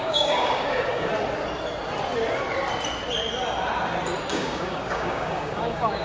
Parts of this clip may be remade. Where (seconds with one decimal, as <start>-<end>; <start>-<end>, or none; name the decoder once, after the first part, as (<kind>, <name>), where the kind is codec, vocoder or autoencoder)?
0.0-1.1 (codec, DAC); 4.3-6.0